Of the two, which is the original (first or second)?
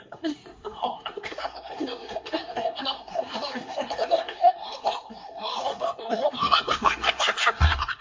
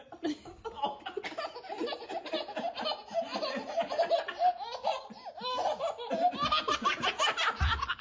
second